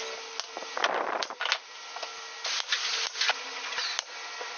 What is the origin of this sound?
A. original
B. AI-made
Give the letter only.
A